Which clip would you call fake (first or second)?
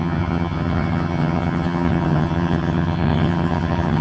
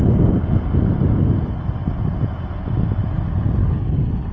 first